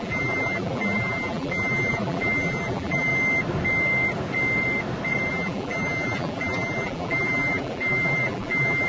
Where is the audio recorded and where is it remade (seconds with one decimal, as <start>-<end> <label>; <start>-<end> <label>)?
0.0-3.1 remade; 3.1-5.3 recorded; 5.3-8.9 remade